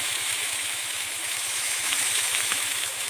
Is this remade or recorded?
remade